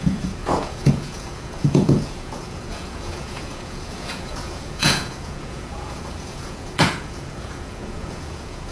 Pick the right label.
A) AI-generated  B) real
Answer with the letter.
A